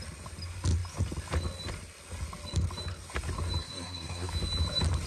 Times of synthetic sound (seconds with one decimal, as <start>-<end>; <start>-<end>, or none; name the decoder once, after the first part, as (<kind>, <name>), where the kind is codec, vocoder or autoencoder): 3.6-4.3 (codec, SNAC)